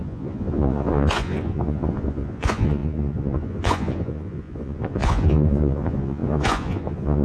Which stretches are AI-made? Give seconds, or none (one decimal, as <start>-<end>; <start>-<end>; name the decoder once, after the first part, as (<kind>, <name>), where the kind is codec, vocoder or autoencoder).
0.0-7.2 (vocoder, Vocos)